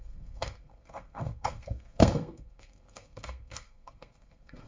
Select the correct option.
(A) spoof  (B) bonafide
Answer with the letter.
A